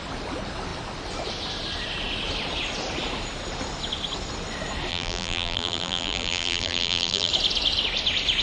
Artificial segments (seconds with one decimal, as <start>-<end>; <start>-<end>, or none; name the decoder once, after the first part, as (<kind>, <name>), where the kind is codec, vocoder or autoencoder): 4.9-7.3 (vocoder, BigVGAN v2)